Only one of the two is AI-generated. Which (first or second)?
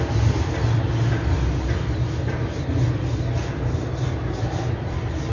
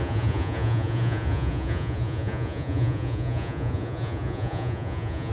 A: second